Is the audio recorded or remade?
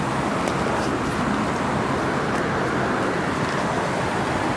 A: recorded